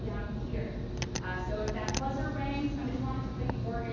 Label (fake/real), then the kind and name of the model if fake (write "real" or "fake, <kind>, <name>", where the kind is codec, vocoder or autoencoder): real